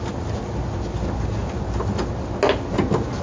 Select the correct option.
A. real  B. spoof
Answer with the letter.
A